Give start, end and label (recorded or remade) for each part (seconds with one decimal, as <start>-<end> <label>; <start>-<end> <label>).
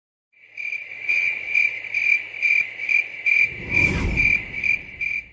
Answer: 0.0-0.9 recorded; 0.9-1.5 remade; 1.5-5.3 recorded